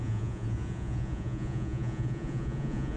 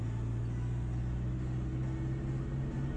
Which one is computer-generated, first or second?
first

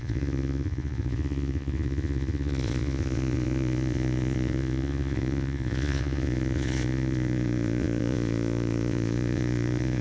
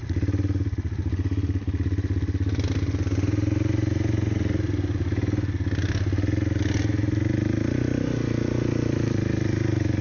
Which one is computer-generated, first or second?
first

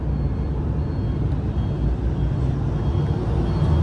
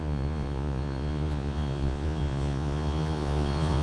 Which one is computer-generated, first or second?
second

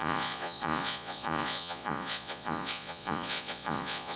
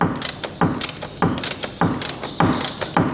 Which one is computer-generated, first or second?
first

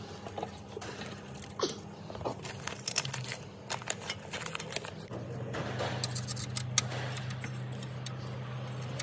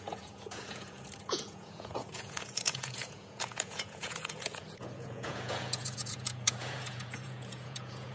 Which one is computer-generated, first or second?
second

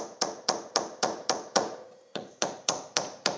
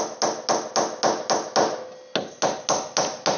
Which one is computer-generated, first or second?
first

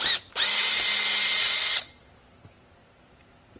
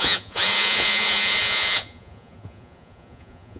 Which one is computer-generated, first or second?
second